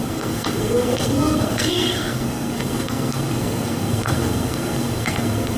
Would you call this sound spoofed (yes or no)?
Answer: yes